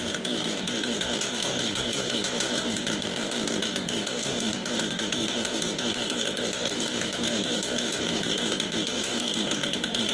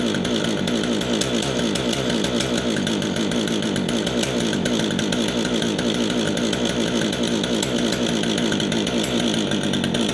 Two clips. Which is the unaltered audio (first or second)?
second